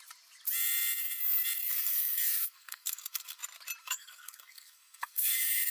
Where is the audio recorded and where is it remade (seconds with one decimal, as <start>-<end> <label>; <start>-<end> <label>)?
0.0-1.6 recorded; 1.6-3.4 remade; 3.4-3.8 recorded; 3.8-5.7 remade